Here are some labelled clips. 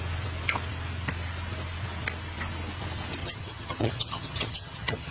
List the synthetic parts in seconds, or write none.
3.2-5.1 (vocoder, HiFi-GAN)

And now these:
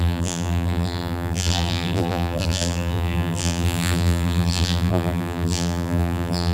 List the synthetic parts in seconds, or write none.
0.0-6.5 (vocoder, BigVGAN v2)

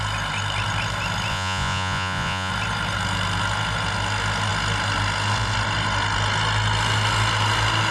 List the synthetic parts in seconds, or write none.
1.3-2.5 (vocoder, Vocos)

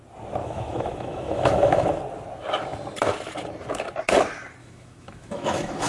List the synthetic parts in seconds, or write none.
0.4-2.0 (autoencoder, DAC-VAE); 4.6-5.9

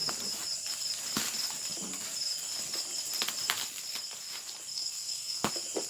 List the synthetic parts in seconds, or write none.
4.7-5.5 (codec, SNAC)

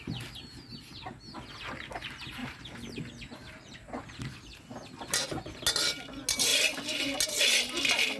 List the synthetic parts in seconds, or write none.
2.4-3.1 (vocoder, BigVGAN v2)

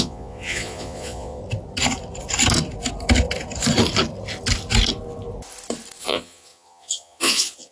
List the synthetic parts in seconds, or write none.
0.0-1.4 (vocoder, Vocos); 6.0-7.7